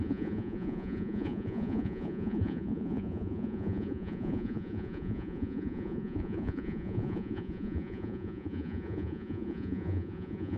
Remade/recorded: remade